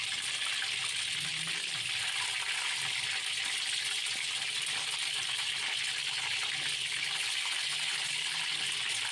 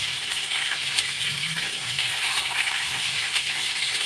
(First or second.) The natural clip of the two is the first